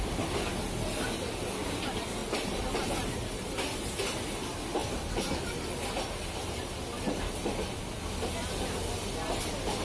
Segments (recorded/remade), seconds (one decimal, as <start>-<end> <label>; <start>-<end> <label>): 0.0-9.8 recorded